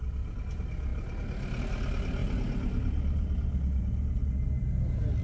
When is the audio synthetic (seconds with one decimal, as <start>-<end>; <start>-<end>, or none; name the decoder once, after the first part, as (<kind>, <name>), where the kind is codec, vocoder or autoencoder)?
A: none